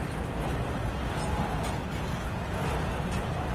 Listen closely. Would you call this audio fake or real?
real